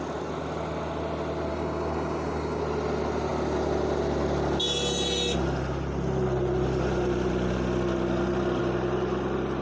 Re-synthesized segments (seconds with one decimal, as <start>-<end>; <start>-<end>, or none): 1.5-2.6